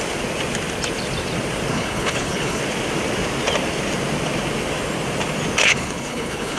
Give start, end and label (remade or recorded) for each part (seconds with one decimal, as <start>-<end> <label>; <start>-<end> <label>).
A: 0.0-1.7 recorded; 1.7-2.6 remade; 2.6-5.6 recorded; 5.6-6.6 remade